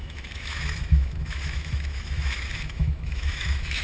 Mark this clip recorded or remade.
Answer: remade